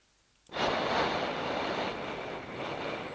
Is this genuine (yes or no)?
yes